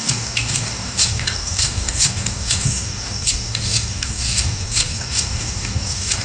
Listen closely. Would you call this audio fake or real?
fake